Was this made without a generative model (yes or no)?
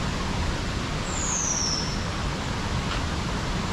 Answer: yes